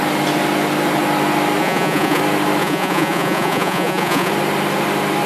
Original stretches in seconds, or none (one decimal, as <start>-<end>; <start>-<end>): 0.0-1.6; 2.2-2.6; 4.3-5.3